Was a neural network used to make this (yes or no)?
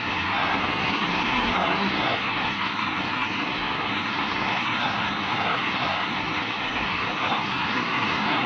yes